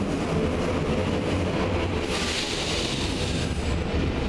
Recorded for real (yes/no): yes